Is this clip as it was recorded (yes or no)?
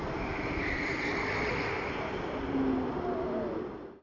yes